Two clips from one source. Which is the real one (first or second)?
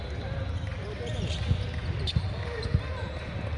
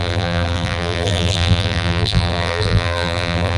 first